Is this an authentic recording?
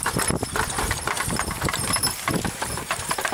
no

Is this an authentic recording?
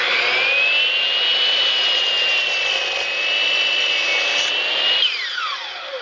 yes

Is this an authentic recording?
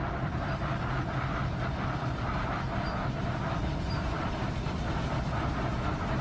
yes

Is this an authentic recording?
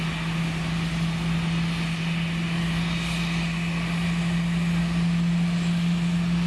yes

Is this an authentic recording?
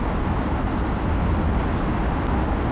yes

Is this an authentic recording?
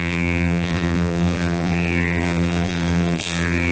no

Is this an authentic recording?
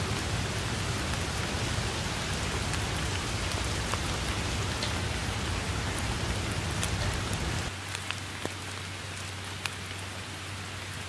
yes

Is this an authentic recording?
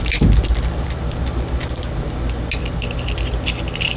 yes